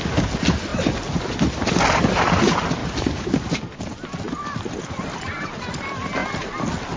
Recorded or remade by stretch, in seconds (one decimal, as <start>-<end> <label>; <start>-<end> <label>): 0.0-7.0 recorded